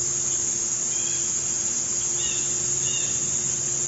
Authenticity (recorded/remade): recorded